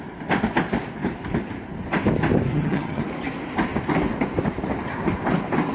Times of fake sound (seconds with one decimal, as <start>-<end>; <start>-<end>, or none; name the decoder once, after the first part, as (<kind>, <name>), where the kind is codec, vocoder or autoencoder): 2.5-3.0 (vocoder, HiFi-GAN)